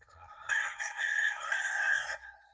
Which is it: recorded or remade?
remade